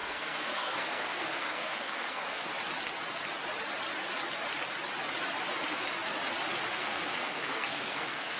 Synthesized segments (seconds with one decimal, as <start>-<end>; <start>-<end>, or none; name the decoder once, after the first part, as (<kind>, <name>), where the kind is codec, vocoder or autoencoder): 0.0-2.5 (codec, SNAC); 6.7-8.4

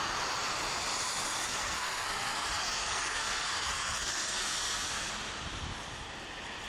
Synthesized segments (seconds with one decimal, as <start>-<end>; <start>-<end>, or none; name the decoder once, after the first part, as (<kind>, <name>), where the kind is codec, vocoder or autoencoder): 1.4-5.1 (codec, SNAC)

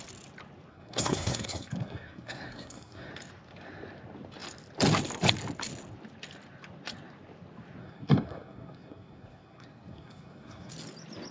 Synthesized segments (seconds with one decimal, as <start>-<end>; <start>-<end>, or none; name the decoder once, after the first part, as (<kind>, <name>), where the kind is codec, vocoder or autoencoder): 0.7-3.1 (codec, SNAC); 7.8-10.7

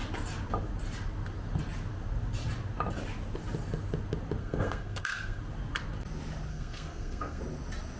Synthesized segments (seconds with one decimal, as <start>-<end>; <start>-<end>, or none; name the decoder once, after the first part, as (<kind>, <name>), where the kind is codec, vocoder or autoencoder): 4.4-5.4 (codec, SNAC); 6.5-7.4

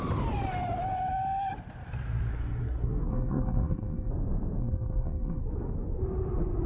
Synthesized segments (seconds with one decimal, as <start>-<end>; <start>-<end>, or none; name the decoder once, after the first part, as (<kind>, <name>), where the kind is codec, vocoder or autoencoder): 2.3-4.1 (codec, SNAC); 4.6-5.4

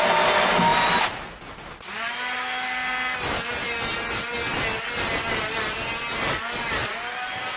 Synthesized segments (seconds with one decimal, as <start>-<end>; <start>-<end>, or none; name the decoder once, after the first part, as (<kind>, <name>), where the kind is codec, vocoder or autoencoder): none

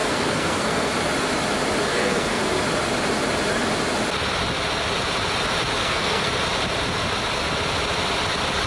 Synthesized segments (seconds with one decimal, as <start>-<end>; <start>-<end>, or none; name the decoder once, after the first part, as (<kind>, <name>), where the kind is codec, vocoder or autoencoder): 0.0-0.9 (codec, SNAC); 1.9-2.4; 5.8-6.3